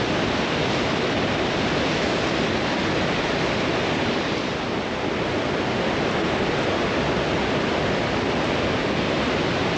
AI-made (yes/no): no